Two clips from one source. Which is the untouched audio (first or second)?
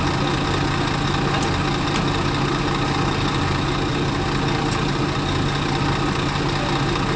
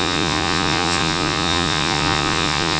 first